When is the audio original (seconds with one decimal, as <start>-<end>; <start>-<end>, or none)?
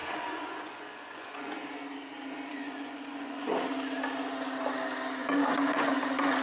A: 1.5-2.5; 3.5-5.2; 5.9-6.4